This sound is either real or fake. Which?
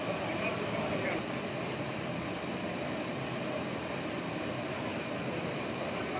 real